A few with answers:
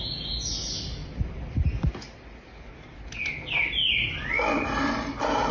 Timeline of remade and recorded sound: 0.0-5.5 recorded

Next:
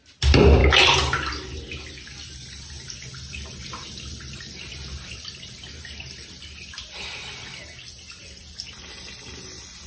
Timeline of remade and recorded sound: 0.0-9.9 recorded